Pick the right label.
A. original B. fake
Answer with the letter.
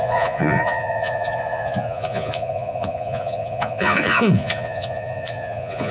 B